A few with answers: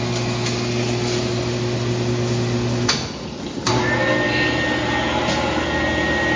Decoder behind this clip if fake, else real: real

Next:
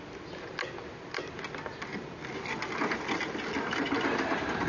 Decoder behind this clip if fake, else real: real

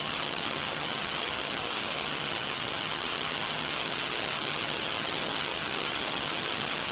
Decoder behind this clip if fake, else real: fake, vocoder, HiFi-GAN